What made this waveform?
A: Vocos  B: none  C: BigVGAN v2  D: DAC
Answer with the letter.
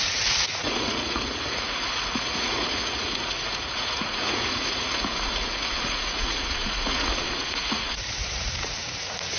A